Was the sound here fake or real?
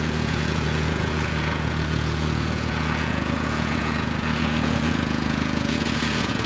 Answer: fake